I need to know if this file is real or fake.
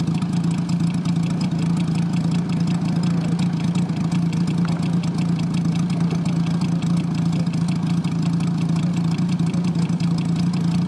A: real